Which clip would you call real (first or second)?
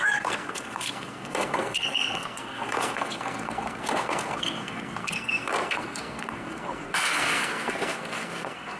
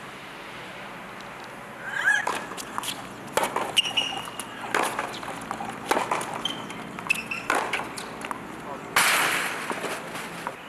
second